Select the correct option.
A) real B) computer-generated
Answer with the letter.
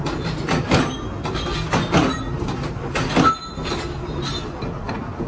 A